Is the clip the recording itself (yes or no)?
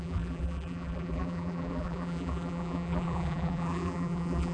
no